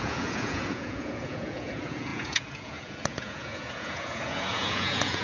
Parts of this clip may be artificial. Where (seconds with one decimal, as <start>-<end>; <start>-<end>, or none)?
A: 0.0-5.2